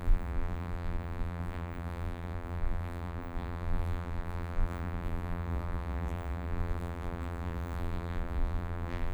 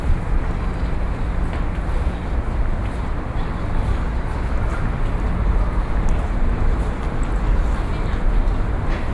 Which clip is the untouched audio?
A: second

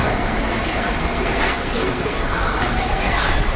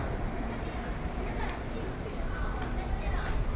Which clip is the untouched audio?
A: second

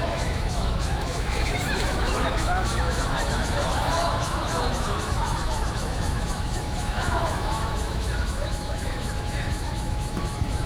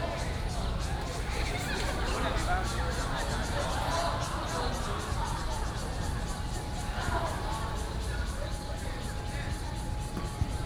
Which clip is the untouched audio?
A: second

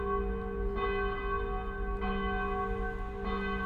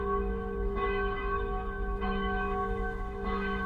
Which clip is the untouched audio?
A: first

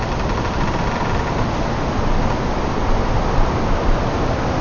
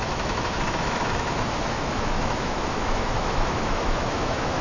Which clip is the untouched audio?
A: first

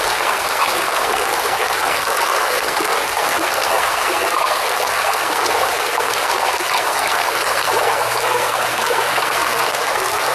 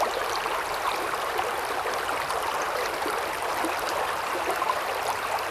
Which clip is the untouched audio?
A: second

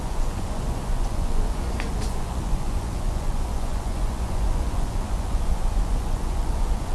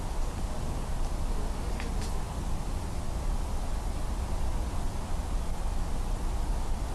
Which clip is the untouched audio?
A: second